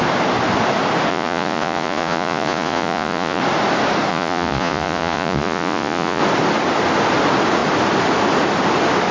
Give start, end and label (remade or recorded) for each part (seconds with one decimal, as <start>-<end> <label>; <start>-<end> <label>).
0.0-1.1 recorded; 1.1-3.4 remade; 3.4-4.1 recorded; 4.1-6.2 remade; 6.2-9.1 recorded